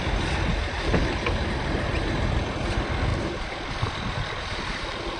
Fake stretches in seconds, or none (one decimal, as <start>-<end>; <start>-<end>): none